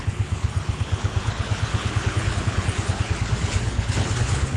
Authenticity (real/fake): fake